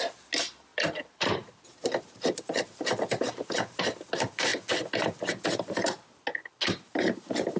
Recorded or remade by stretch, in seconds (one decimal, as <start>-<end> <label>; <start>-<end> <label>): 0.0-0.7 recorded; 0.7-3.8 remade; 3.8-7.6 recorded